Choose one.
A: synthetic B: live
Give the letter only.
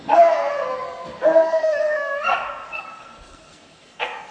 A